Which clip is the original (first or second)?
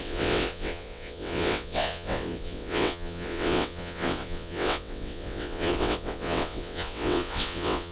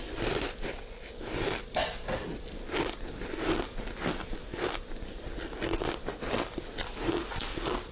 second